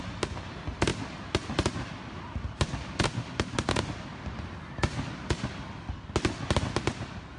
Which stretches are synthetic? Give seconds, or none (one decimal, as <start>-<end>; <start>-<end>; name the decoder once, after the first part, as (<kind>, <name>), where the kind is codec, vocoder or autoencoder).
0.9-5.3 (vocoder, BigVGAN v2)